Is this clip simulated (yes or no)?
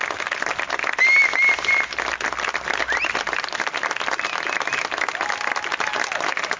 no